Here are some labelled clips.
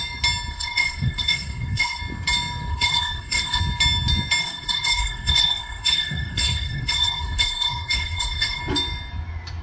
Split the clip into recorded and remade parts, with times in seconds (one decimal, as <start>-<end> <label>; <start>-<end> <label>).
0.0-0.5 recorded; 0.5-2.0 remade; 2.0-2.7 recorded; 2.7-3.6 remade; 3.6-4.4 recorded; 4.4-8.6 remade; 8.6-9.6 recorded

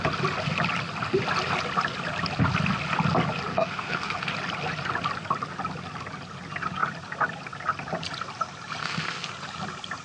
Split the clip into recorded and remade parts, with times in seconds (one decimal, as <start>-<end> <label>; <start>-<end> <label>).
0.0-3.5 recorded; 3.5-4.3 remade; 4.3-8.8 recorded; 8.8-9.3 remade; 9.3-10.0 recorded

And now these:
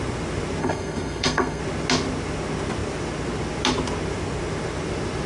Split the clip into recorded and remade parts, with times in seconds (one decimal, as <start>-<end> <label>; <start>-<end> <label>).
0.0-0.6 recorded; 0.6-1.6 remade; 1.6-5.3 recorded

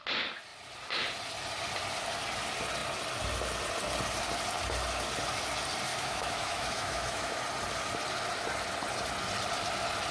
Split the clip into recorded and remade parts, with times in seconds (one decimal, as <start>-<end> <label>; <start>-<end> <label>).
0.0-5.9 recorded; 5.9-7.4 remade; 7.4-10.1 recorded

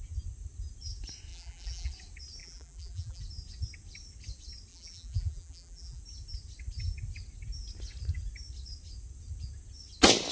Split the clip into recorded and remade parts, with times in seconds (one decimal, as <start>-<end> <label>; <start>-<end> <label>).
0.0-1.3 recorded; 1.3-1.9 remade; 1.9-2.4 recorded; 2.4-3.2 remade; 3.2-4.7 recorded; 4.7-6.0 remade; 6.0-10.3 recorded

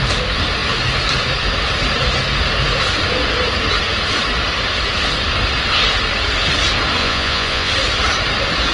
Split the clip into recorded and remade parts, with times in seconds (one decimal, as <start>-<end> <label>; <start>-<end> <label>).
0.0-7.0 recorded; 7.0-7.7 remade; 7.7-8.7 recorded

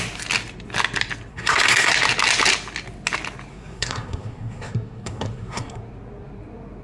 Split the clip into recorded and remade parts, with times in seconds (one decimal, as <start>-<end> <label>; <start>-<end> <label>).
0.0-1.3 recorded; 1.3-1.9 remade; 1.9-3.5 recorded; 3.5-5.8 remade; 5.8-6.8 recorded